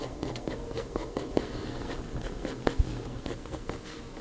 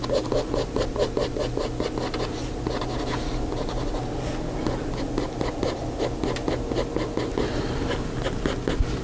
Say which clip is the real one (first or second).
second